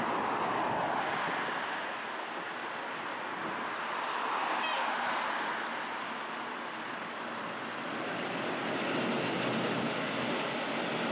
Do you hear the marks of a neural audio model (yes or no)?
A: no